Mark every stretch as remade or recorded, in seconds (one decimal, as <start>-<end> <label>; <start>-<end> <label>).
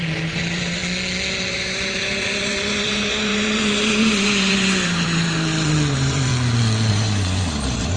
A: 0.0-0.8 remade; 0.8-1.5 recorded; 1.5-6.3 remade; 6.3-6.9 recorded; 6.9-8.0 remade